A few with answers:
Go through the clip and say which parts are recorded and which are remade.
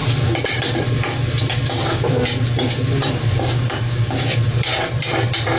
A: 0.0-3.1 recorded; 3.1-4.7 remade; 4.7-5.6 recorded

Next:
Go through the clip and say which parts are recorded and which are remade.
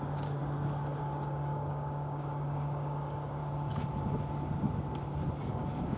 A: 0.0-0.4 remade; 0.4-1.0 recorded; 1.0-3.4 remade; 3.4-5.5 recorded; 5.5-6.0 remade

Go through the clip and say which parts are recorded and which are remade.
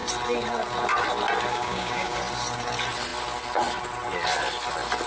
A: 0.0-1.5 recorded; 1.5-2.2 remade; 2.2-5.1 recorded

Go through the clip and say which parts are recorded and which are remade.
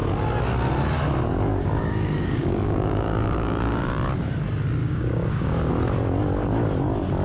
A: 0.0-1.5 recorded; 1.5-3.8 remade; 3.8-4.8 recorded; 4.8-5.7 remade; 5.7-7.2 recorded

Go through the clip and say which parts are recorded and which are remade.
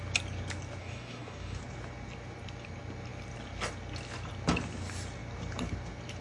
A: 0.0-0.8 recorded; 0.8-1.6 remade; 1.6-6.2 recorded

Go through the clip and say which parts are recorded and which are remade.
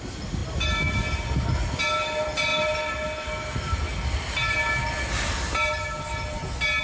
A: 0.0-6.8 recorded